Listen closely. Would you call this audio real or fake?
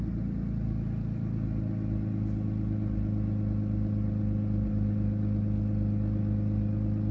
real